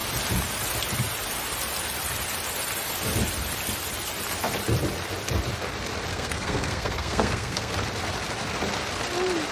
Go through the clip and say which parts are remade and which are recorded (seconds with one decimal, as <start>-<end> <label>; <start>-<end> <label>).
0.0-6.1 recorded; 6.1-7.7 remade; 7.7-9.5 recorded